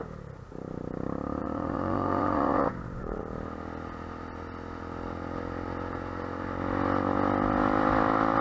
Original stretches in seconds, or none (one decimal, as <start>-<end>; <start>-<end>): 0.0-1.4; 3.2-8.4